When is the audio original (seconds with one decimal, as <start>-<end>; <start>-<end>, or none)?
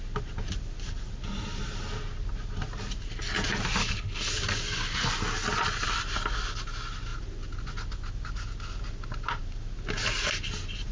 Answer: 0.0-3.8; 4.3-10.9